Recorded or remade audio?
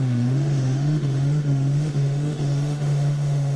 remade